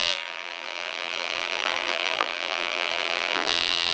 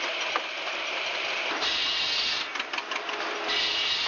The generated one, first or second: first